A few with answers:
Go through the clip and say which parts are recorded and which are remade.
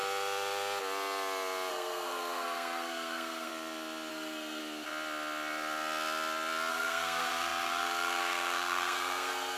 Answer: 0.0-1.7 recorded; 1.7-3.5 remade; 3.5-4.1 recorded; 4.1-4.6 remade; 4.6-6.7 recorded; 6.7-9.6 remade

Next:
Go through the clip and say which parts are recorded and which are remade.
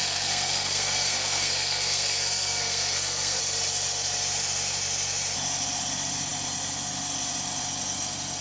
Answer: 0.0-3.4 remade; 3.4-8.4 recorded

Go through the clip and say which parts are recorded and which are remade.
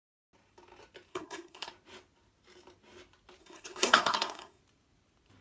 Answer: 0.0-1.1 recorded; 1.1-1.7 remade; 1.7-3.4 recorded; 3.4-4.6 remade; 4.6-5.4 recorded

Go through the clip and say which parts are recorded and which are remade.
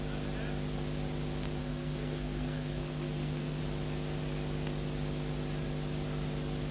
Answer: 0.0-1.6 recorded; 1.6-3.6 remade; 3.6-6.7 recorded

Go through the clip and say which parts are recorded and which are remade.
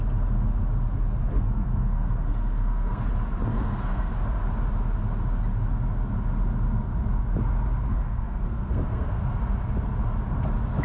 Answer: 0.0-1.2 recorded; 1.2-3.1 remade; 3.1-3.5 recorded; 3.5-4.1 remade; 4.1-7.9 recorded; 7.9-9.3 remade; 9.3-10.8 recorded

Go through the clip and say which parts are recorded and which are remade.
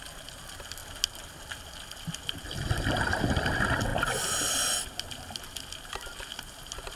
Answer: 0.0-7.0 recorded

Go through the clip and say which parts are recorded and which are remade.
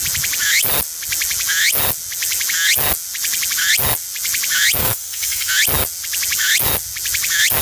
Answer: 0.0-4.8 recorded; 4.8-5.5 remade; 5.5-7.6 recorded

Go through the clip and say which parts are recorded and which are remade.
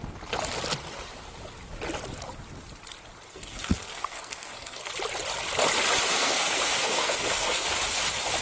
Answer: 0.0-3.3 recorded; 3.3-4.9 remade; 4.9-6.1 recorded; 6.1-7.7 remade; 7.7-8.4 recorded